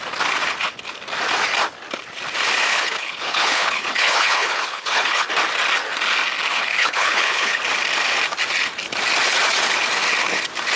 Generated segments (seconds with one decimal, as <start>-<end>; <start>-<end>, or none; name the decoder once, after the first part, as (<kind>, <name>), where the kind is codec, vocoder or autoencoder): 2.7-5.3 (codec, HILCodec); 6.5-7.6